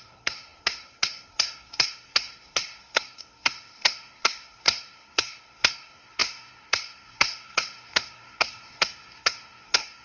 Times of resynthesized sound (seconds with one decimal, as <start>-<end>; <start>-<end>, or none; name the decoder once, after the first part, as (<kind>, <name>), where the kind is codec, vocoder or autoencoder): 0.0-10.0 (codec, SNAC)